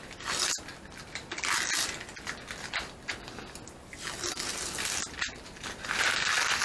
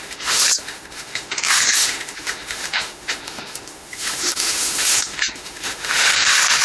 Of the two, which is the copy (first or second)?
second